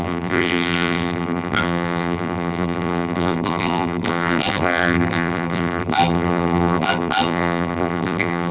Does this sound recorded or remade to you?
remade